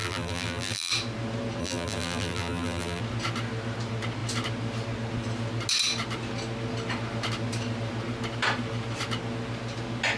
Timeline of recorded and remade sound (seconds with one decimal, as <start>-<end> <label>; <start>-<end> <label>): 0.0-0.9 remade; 0.9-1.6 recorded; 1.6-3.0 remade; 3.0-10.2 recorded